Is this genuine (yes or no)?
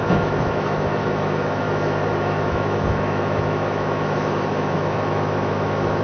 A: no